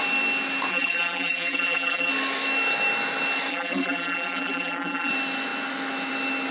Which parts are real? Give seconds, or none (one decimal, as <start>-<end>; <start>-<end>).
0.0-0.7; 2.1-3.5; 5.1-6.5